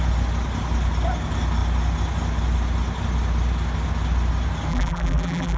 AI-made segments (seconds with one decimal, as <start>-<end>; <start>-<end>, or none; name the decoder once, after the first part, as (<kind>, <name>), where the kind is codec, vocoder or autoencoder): 4.7-5.6 (vocoder, BigVGAN v2)